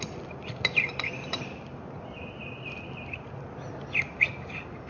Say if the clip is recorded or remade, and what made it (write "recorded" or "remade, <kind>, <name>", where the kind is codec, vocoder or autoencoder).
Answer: remade, vocoder, BigVGAN v2